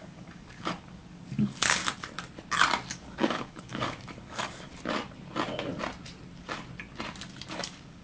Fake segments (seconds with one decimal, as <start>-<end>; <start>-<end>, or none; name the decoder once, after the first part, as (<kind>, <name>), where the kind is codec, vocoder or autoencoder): 0.0-1.8 (codec, DAC); 2.9-4.7; 7.5-8.0